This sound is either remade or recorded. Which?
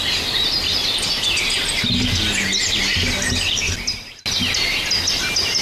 recorded